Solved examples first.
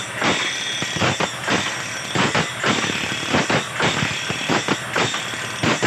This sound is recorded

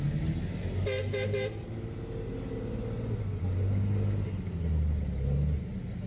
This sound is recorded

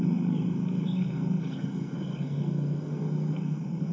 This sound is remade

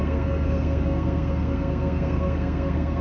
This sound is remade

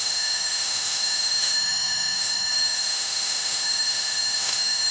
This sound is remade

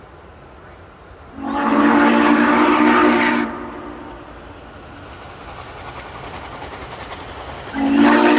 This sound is recorded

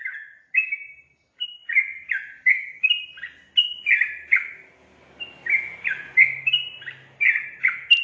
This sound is recorded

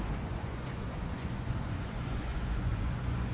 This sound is remade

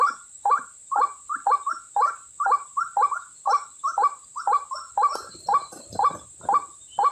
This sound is remade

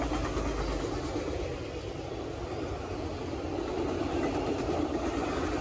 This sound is recorded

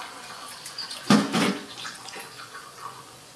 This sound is remade